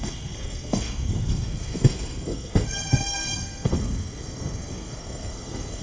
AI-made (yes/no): yes